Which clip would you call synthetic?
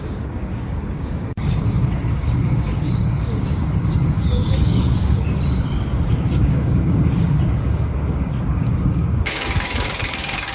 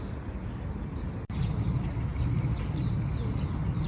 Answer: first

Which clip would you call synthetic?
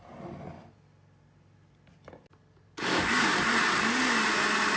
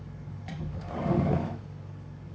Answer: second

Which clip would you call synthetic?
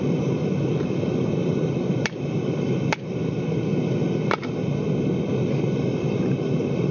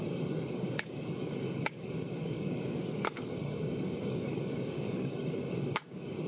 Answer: second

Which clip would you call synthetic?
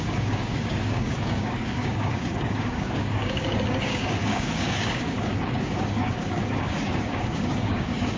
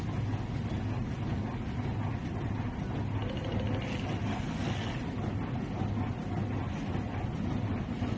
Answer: first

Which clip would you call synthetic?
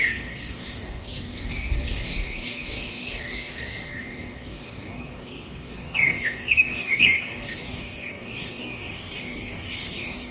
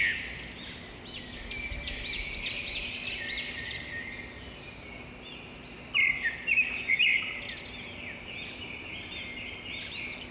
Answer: first